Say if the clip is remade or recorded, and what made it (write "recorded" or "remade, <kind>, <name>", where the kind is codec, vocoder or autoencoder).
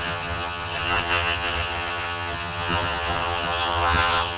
remade, vocoder, HiFi-GAN